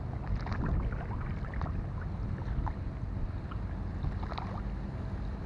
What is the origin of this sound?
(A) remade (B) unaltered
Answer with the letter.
B